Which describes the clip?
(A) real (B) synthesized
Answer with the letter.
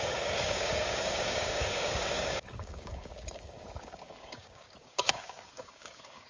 B